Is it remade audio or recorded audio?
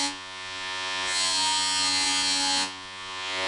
remade